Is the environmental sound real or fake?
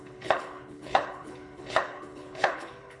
fake